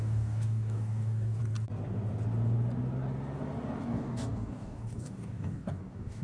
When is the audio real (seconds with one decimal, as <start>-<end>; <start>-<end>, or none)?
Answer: 1.4-3.8